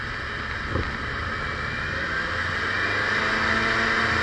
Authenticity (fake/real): real